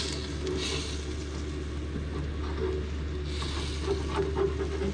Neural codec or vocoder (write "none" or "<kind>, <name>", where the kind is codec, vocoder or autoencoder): none